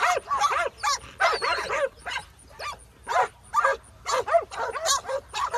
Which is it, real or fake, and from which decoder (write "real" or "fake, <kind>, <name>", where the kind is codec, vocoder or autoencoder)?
real